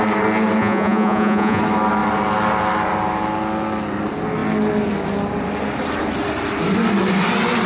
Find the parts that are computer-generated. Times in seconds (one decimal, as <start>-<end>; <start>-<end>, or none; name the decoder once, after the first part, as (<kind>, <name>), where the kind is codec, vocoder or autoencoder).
0.6-1.6 (vocoder, Vocos)